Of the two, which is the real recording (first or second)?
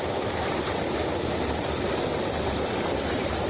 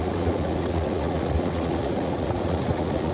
first